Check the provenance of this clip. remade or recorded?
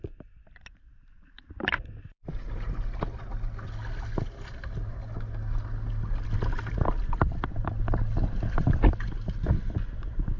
recorded